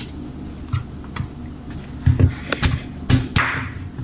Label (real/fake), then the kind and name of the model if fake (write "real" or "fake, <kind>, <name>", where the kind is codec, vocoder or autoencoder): real